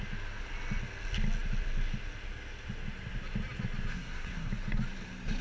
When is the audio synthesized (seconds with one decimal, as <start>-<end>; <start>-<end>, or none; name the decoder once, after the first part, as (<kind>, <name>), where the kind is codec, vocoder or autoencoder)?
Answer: 3.9-4.5 (codec, SNAC)